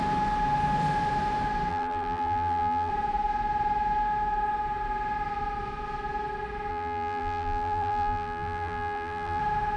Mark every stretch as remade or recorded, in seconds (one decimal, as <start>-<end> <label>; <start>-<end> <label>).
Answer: 0.0-1.7 recorded; 1.7-2.9 remade; 2.9-6.7 recorded; 6.7-9.4 remade; 9.4-9.8 recorded